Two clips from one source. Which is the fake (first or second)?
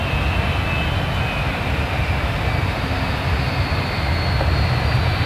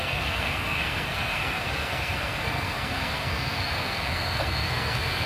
second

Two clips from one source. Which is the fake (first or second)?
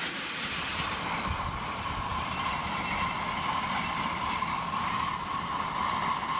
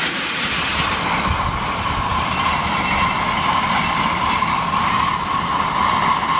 first